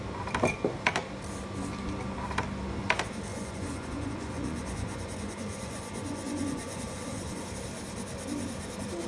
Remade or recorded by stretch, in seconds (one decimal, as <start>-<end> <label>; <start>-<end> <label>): 0.0-3.3 recorded; 3.3-7.5 remade; 7.5-9.1 recorded